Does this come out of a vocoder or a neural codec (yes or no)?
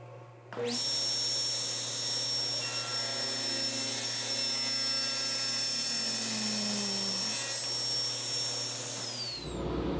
no